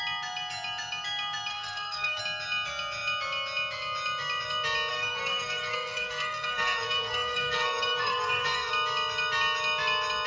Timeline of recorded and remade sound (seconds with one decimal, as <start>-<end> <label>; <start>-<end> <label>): 0.0-1.5 recorded; 1.5-2.2 remade; 2.2-4.9 recorded; 4.9-8.7 remade; 8.7-10.3 recorded